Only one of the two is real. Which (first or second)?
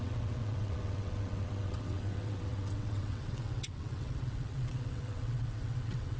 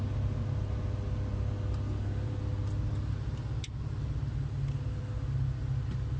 second